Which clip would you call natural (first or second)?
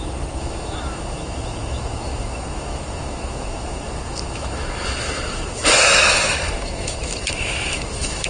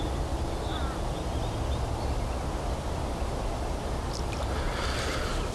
second